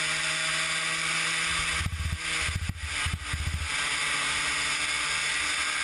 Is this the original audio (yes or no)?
yes